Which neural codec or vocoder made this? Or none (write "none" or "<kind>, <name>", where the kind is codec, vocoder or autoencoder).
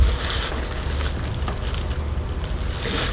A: none